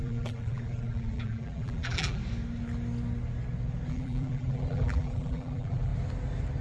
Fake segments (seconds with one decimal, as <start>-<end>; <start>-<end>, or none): 0.0-2.2; 3.9-5.9